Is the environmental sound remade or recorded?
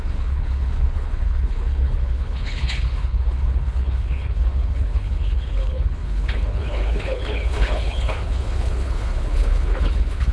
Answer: remade